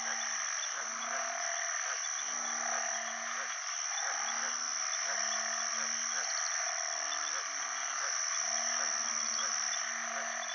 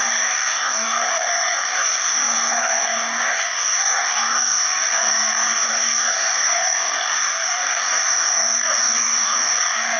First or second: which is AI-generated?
second